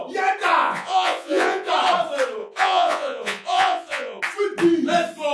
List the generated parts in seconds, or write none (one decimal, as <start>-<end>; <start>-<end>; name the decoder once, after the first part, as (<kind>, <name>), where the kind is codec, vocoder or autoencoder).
0.6-1.7 (vocoder, Vocos); 2.4-4.2